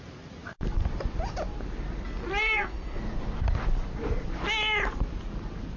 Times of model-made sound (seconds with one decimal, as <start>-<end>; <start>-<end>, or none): 2.4-3.0